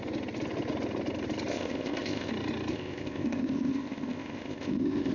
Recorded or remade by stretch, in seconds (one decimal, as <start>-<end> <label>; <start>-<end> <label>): 0.0-1.5 recorded; 1.5-2.3 remade; 2.3-2.7 recorded; 2.7-5.1 remade